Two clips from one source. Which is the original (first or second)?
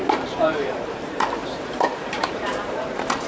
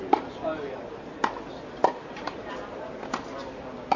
second